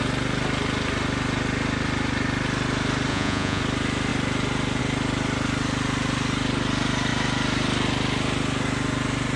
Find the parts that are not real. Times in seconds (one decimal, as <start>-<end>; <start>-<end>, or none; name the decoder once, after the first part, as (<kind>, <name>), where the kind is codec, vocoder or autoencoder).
3.1-3.6 (vocoder, Vocos)